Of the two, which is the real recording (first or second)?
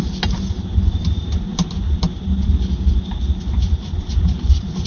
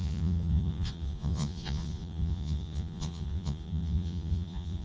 first